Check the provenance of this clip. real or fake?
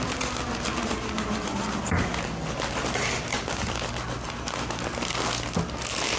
real